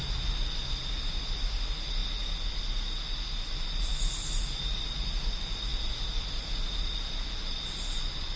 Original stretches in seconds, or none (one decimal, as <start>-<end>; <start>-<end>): 0.0-8.4